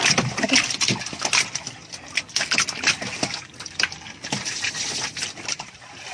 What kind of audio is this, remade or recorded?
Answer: recorded